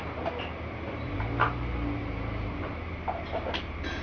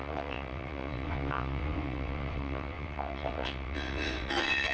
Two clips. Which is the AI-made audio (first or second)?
second